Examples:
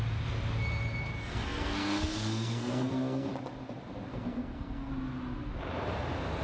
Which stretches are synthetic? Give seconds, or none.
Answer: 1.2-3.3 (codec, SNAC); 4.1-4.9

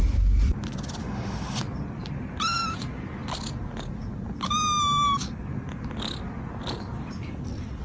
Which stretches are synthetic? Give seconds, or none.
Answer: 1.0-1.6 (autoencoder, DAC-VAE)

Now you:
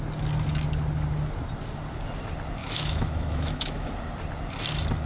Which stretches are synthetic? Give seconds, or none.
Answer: 2.6-3.9 (autoencoder, DAC-VAE)